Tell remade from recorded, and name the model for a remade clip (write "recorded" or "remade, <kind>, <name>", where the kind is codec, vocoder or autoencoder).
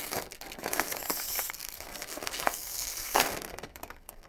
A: remade, codec, SNAC